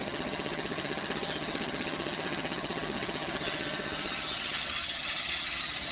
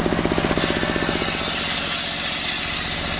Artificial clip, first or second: first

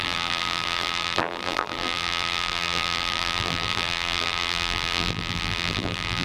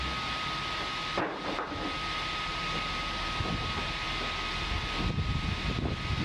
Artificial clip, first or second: first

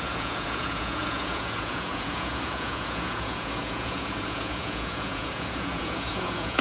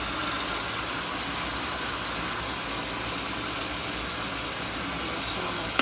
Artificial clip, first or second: first